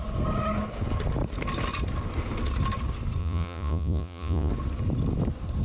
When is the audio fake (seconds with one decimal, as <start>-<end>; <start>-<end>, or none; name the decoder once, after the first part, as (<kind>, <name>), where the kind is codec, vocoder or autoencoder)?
3.2-4.5 (vocoder, Vocos)